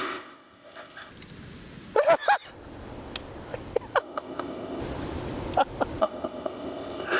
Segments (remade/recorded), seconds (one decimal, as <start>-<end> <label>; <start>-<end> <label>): 0.0-1.1 remade; 1.1-4.0 recorded; 4.0-4.8 remade; 4.8-6.0 recorded; 6.0-7.2 remade